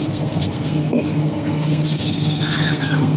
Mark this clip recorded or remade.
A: remade